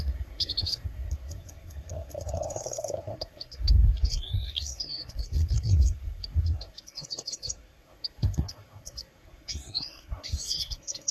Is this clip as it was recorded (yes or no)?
no